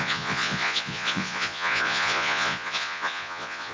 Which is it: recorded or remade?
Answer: remade